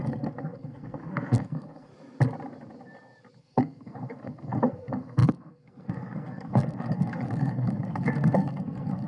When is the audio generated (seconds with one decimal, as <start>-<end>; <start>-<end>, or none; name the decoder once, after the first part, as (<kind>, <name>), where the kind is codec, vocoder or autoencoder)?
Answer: 0.0-1.9 (codec, SNAC); 3.4-9.1